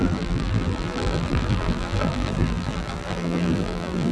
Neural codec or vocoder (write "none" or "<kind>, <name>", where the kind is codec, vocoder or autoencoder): vocoder, BigVGAN v2